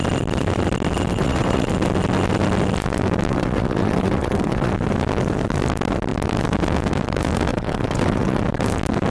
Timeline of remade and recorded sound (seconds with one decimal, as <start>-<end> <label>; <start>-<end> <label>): 0.0-1.1 recorded; 1.1-1.7 remade; 1.7-3.3 recorded; 3.3-4.7 remade; 4.7-7.5 recorded; 7.5-8.4 remade; 8.4-9.1 recorded